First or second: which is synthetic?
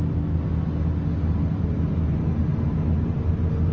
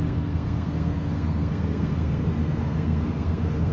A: second